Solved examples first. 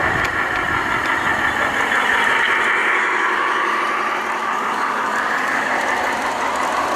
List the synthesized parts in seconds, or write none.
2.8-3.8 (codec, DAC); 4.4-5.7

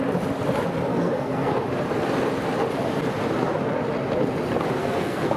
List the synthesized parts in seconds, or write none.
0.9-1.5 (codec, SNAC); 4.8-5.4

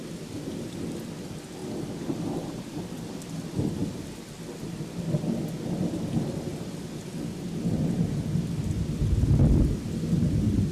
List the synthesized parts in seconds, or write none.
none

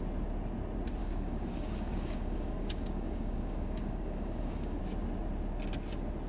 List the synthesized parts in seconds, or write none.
1.0-4.8 (codec, DAC)